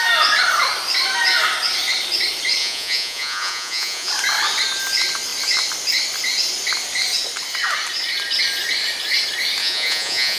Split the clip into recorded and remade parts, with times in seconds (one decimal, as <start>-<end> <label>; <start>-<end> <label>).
0.0-2.6 recorded; 2.6-4.1 remade; 4.1-9.6 recorded; 9.6-10.4 remade